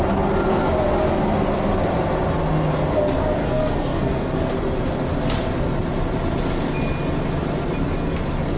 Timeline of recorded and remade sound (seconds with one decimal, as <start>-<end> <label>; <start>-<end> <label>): 0.0-3.4 recorded; 3.4-4.4 remade; 4.4-8.6 recorded